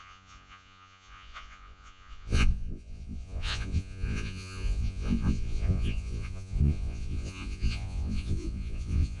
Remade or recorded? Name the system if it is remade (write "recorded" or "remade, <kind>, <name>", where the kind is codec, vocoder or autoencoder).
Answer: remade, vocoder, Vocos